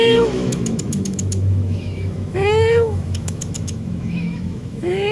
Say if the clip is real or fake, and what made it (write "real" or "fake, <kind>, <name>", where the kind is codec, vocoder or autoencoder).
fake, autoencoder, DAC-VAE